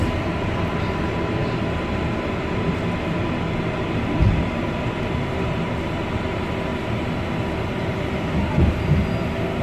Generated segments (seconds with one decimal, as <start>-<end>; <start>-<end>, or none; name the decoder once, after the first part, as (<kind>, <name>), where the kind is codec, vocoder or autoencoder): none